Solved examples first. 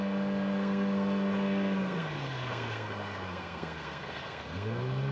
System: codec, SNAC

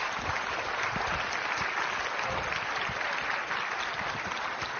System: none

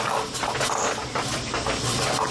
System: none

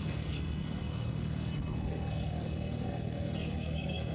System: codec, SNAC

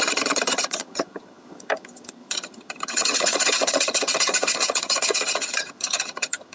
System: vocoder, HiFi-GAN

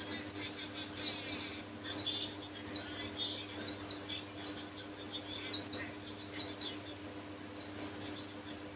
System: none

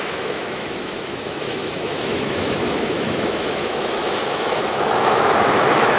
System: autoencoder, DAC-VAE